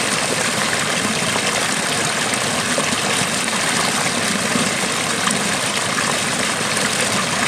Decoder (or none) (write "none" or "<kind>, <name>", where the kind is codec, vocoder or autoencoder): none